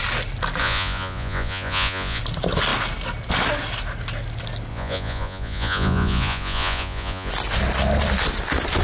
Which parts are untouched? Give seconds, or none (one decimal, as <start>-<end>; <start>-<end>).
0.0-0.6; 2.2-4.7; 7.3-8.8